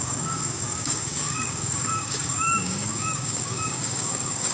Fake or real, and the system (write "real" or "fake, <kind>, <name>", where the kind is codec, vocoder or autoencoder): fake, codec, DAC